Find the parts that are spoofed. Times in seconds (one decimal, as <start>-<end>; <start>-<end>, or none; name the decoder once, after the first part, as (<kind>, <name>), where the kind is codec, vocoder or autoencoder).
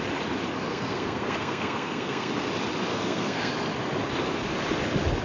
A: 0.7-2.5 (codec, SNAC); 2.9-3.5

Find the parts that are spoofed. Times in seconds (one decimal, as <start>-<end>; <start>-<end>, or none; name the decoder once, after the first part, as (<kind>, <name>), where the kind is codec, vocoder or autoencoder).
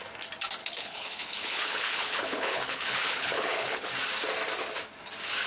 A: 0.6-3.9 (codec, HILCodec)